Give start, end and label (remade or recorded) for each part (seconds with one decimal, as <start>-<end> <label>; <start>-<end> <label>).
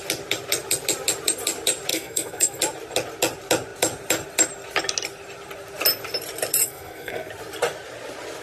0.0-1.9 recorded; 1.9-2.6 remade; 2.6-6.6 recorded; 6.6-7.3 remade; 7.3-8.4 recorded